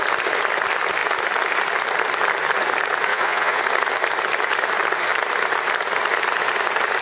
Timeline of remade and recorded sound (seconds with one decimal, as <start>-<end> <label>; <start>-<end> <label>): 0.0-3.1 recorded; 3.1-3.6 remade; 3.6-7.0 recorded